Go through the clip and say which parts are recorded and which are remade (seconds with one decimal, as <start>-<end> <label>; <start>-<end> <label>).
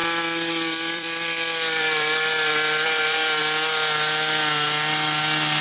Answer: 0.0-3.4 remade; 3.4-5.6 recorded